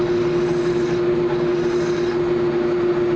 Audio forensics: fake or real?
real